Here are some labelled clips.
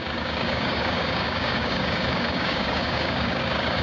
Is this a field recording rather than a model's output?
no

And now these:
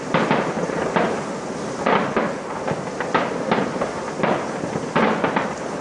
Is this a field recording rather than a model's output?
yes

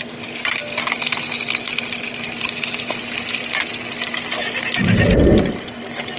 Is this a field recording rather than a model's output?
yes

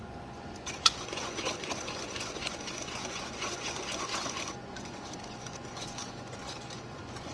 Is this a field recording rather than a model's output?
no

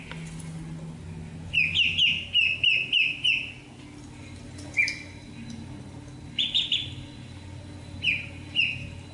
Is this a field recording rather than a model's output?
yes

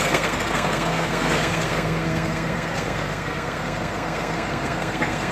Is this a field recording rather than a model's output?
no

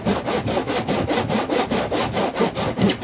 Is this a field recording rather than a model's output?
yes